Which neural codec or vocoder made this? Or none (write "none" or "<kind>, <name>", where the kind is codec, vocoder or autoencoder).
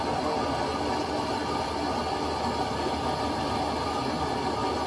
none